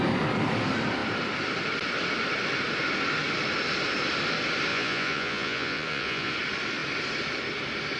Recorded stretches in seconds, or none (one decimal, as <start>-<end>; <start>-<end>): 0.0-4.7; 6.3-8.0